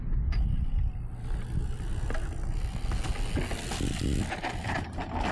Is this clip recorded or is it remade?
recorded